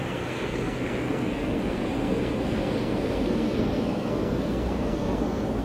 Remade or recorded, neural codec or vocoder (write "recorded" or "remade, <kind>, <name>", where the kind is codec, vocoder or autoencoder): remade, codec, SNAC